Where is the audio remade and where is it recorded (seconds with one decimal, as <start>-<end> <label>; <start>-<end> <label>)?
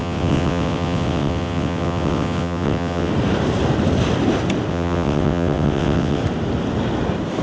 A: 0.0-3.1 remade; 3.1-4.7 recorded; 4.7-6.2 remade; 6.2-7.4 recorded